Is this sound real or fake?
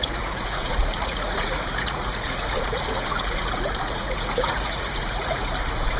fake